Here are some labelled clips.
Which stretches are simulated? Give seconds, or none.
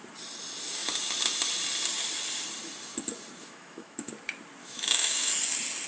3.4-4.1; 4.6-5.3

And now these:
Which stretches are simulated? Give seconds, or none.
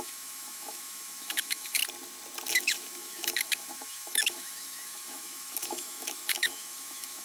0.0-1.8; 2.5-7.2